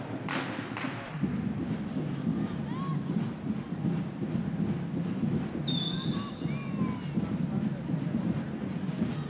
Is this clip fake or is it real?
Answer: real